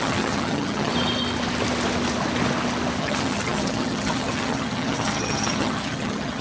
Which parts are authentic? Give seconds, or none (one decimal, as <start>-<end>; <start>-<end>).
0.9-3.0